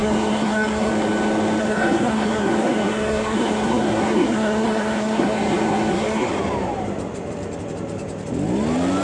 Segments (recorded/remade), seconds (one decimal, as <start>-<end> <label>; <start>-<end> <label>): 0.0-0.9 remade; 0.9-1.6 recorded; 1.6-6.3 remade; 6.3-9.0 recorded